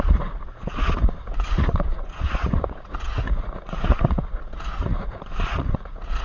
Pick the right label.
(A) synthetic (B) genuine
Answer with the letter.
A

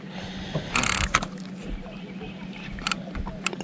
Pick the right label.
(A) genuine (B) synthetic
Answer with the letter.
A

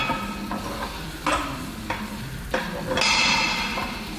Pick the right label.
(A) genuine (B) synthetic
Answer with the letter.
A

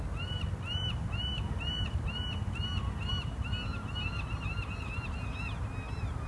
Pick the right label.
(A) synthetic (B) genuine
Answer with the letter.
B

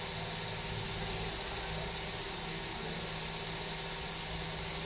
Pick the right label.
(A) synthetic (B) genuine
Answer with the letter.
B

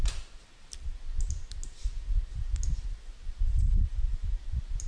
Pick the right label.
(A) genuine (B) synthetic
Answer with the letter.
A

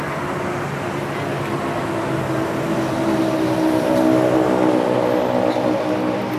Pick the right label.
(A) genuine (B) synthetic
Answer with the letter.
A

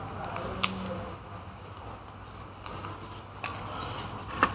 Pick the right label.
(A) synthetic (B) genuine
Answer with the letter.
B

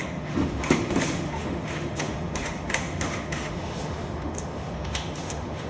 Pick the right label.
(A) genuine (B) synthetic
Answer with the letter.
B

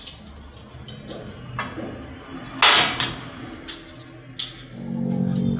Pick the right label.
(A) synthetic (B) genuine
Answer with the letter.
B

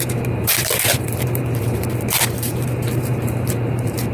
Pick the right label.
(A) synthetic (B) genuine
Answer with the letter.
A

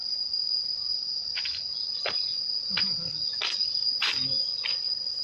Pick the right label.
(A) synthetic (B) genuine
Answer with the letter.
B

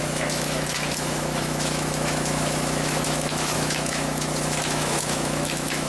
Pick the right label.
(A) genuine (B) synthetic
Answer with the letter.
B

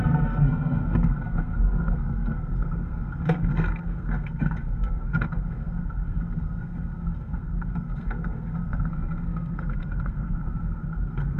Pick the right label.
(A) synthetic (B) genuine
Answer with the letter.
A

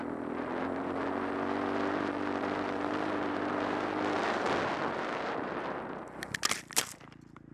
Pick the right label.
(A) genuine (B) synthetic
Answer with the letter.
A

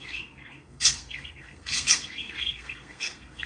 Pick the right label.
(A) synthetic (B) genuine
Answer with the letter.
A